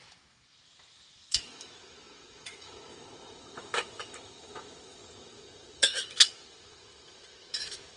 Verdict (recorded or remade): remade